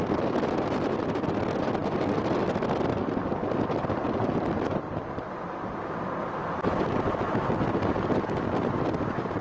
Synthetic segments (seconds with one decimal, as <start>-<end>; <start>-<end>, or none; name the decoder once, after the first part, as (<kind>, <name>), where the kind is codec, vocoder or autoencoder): none